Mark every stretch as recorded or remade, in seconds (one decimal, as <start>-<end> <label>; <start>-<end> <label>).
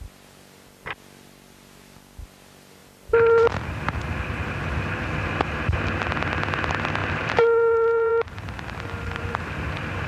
0.0-7.0 recorded; 7.0-8.1 remade; 8.1-10.1 recorded